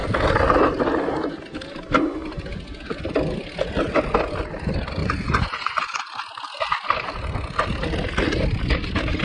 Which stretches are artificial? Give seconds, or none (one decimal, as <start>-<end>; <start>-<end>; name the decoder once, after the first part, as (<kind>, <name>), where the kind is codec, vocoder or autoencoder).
5.0-6.0 (vocoder, Vocos)